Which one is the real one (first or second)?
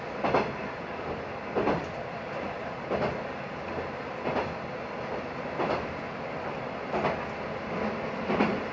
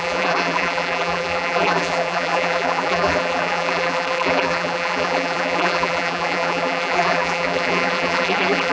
first